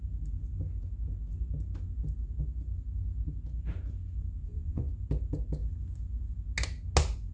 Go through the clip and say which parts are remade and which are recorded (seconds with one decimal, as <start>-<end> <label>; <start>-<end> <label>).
0.0-4.4 recorded; 4.4-4.9 remade; 4.9-7.3 recorded